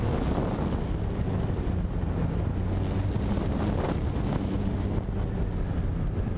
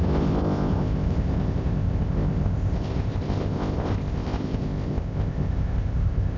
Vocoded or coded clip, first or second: second